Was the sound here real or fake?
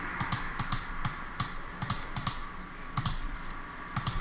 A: real